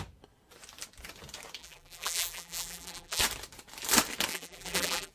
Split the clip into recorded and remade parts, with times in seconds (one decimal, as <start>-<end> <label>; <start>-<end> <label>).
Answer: 0.0-1.6 recorded; 1.6-3.2 remade; 3.2-4.3 recorded; 4.3-5.1 remade